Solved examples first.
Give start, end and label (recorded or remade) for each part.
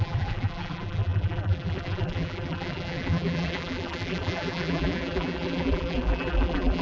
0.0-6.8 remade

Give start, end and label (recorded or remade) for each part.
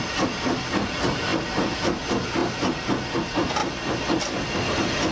0.0-5.1 recorded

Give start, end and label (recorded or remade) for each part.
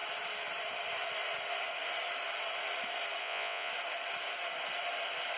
0.0-3.2 recorded; 3.2-3.7 remade; 3.7-5.4 recorded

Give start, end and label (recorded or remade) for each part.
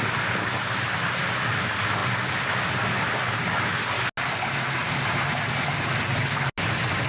0.0-7.1 recorded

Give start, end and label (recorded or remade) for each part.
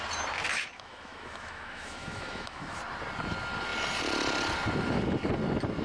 0.0-0.5 recorded; 0.5-2.8 remade; 2.8-5.8 recorded